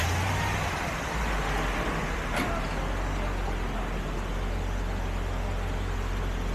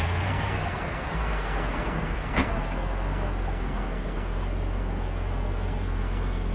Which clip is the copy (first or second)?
second